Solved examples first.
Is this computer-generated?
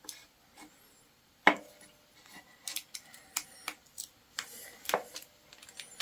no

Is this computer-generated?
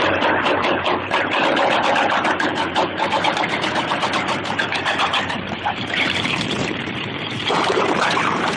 yes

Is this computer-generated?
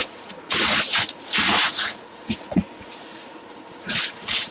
yes